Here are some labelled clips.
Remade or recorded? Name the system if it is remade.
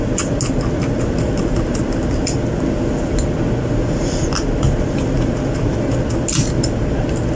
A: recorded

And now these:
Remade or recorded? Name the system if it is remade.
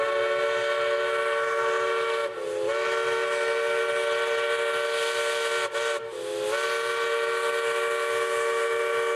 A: recorded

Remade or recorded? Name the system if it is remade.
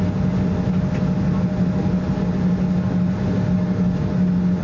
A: recorded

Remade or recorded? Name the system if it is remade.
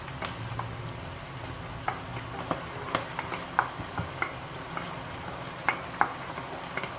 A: recorded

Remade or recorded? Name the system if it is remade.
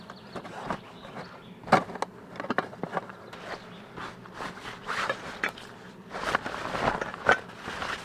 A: recorded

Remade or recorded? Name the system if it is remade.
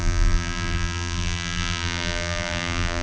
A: remade, vocoder, BigVGAN v2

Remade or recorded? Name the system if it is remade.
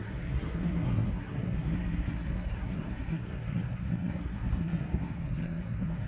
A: remade, codec, SNAC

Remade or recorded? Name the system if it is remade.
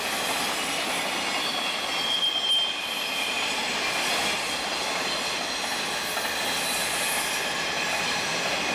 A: recorded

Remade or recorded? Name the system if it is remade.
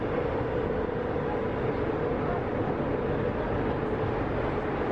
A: recorded